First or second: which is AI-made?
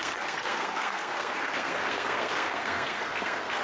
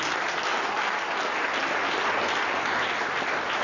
first